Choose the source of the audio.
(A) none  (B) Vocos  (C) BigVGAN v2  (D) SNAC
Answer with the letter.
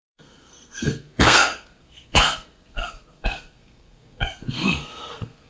D